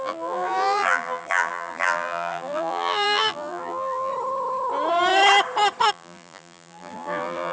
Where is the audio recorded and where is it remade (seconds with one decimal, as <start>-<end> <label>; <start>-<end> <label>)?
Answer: 0.0-4.1 remade; 4.1-5.9 recorded; 5.9-7.5 remade